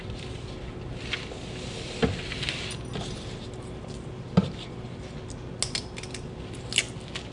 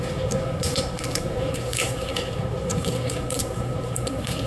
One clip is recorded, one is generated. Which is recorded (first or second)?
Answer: first